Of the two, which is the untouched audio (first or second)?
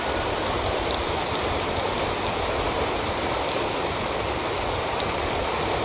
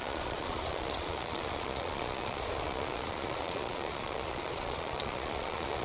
first